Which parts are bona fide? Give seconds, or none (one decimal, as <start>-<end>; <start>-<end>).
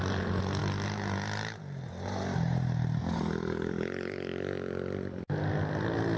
0.0-0.6; 3.7-6.2